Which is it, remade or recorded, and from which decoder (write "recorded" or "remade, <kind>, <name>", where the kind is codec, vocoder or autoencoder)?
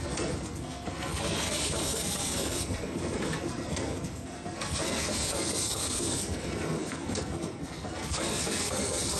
remade, codec, SNAC